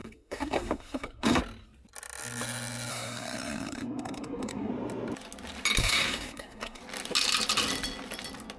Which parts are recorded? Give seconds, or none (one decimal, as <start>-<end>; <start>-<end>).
1.4-2.9; 4.7-5.8; 6.8-8.6